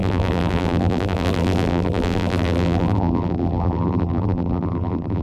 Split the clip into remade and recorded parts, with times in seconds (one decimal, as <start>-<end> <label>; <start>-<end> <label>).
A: 0.0-5.2 remade